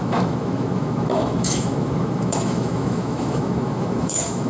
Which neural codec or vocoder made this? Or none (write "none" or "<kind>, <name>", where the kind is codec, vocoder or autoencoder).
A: autoencoder, DAC-VAE